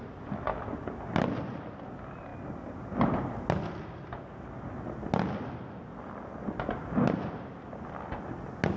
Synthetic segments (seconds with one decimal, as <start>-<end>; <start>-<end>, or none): none